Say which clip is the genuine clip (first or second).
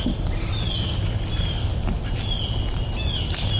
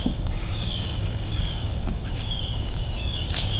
first